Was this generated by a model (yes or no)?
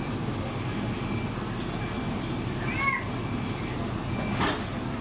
no